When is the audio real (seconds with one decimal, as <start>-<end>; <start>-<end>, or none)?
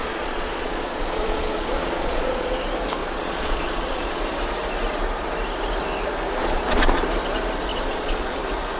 2.6-3.0; 4.2-6.4; 7.0-7.7; 8.4-8.8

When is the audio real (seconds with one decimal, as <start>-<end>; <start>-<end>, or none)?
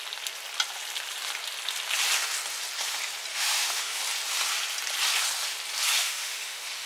0.0-3.3; 4.0-6.0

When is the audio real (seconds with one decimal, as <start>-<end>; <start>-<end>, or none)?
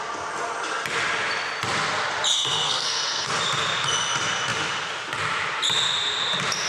0.0-2.3; 3.3-6.7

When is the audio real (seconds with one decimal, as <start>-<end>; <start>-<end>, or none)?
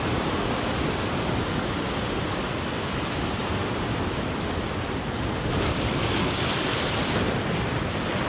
0.0-8.3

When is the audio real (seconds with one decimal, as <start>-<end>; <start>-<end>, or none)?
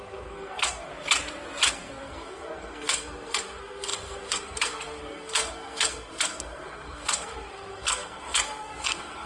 0.9-1.7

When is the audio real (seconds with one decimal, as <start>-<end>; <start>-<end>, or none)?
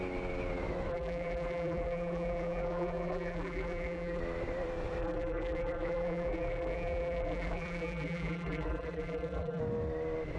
0.0-0.9; 4.2-5.0; 9.6-10.4